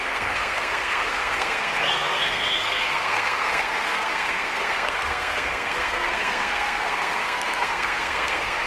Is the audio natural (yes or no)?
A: no